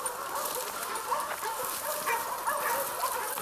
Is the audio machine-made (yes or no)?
no